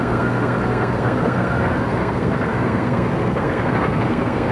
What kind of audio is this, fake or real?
fake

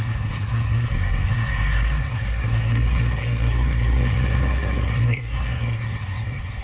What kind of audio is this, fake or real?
fake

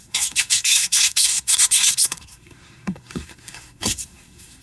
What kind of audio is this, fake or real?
fake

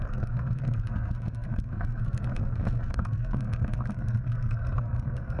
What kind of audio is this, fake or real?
fake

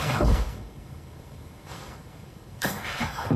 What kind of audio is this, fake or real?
fake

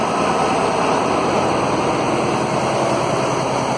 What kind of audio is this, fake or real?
real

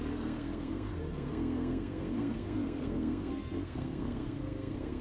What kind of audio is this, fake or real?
fake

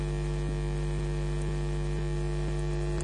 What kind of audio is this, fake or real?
real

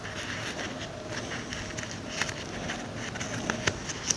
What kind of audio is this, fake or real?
real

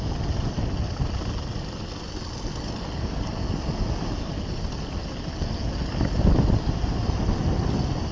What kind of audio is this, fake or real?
real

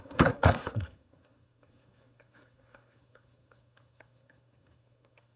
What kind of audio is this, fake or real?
fake